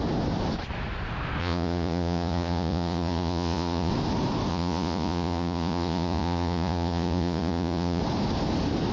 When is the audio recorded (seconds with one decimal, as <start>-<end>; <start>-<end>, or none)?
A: 0.0-1.4; 3.9-4.5; 8.0-8.9